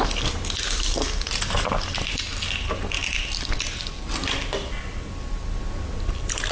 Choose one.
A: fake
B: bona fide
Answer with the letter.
B